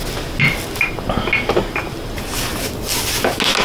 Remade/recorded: recorded